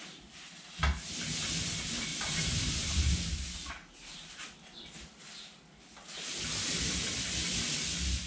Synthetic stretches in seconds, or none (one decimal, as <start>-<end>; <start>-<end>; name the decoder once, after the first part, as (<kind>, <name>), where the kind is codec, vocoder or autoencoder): 2.1-4.3 (vocoder, BigVGAN v2)